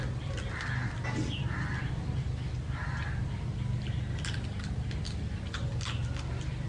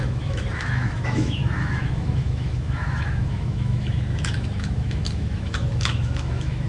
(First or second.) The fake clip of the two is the second